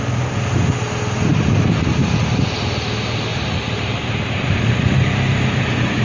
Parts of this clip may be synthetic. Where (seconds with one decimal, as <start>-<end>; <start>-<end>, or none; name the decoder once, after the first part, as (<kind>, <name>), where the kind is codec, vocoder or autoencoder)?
1.3-1.9 (vocoder, BigVGAN v2); 3.3-6.0